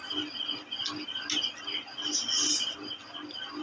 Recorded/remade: recorded